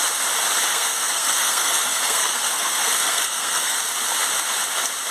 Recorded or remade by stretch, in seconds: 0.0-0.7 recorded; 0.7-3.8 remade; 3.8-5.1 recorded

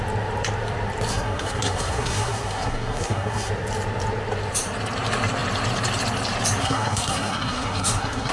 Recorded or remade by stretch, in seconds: 0.0-1.1 recorded; 1.1-3.5 remade; 3.5-6.6 recorded; 6.6-8.3 remade

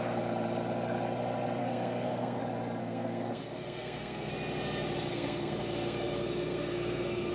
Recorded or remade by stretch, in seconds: 0.0-1.6 recorded; 1.6-2.4 remade; 2.4-2.8 recorded; 2.8-4.3 remade; 4.3-5.1 recorded; 5.1-7.3 remade